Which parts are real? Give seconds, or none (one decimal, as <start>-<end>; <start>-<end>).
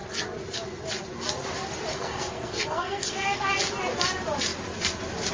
0.0-1.9; 3.5-5.3